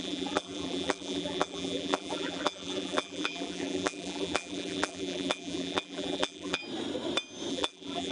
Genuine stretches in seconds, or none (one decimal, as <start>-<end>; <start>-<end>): 6.6-7.5